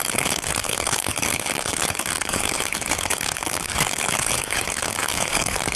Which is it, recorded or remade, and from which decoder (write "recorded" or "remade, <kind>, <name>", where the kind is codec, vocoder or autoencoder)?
remade, codec, DAC